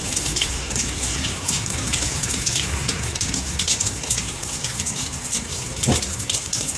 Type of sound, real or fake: fake